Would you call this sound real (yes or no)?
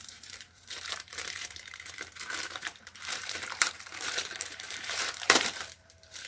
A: no